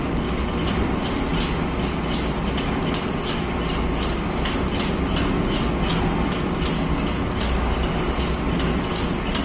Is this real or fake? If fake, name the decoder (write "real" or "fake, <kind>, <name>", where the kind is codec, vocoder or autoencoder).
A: real